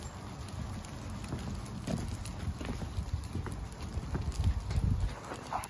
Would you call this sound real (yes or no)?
yes